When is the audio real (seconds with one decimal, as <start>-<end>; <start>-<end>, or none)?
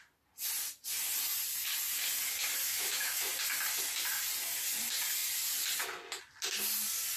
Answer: 0.0-2.7; 3.3-7.2